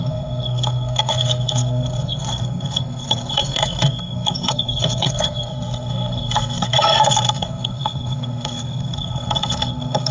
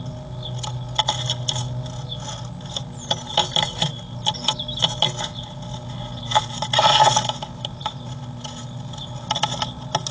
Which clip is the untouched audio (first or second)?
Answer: second